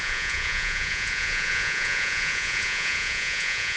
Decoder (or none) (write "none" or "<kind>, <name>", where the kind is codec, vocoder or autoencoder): vocoder, Vocos